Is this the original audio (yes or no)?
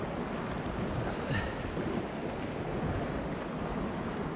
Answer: yes